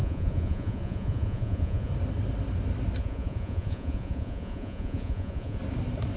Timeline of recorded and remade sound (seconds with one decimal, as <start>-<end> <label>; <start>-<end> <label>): 0.0-1.9 remade; 1.9-3.0 recorded; 3.0-5.6 remade; 5.6-6.2 recorded